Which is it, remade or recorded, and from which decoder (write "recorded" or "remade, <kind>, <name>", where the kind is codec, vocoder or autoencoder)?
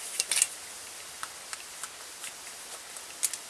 recorded